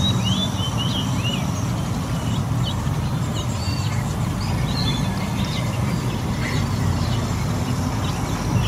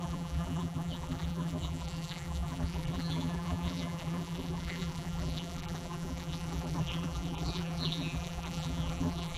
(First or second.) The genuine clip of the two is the first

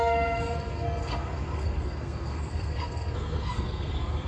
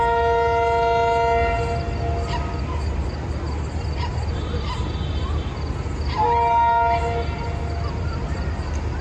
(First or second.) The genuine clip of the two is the second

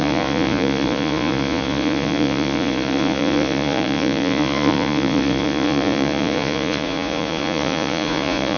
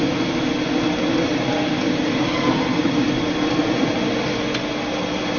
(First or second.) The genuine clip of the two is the second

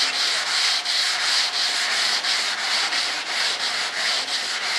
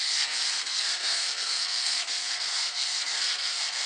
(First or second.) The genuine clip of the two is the first